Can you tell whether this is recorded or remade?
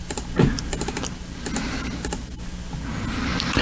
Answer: recorded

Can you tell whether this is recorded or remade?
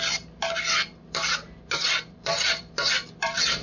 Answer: remade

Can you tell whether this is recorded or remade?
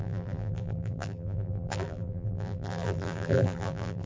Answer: remade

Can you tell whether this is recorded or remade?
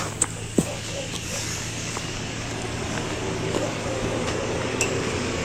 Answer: remade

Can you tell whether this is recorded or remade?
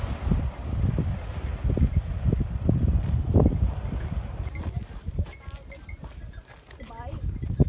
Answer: recorded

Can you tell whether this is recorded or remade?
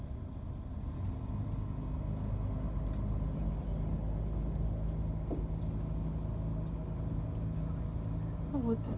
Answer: recorded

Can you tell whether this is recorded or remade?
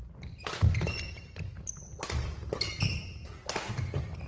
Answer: recorded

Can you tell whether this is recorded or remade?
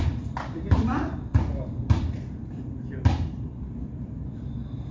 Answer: remade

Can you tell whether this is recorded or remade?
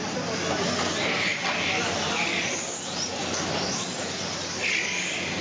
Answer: recorded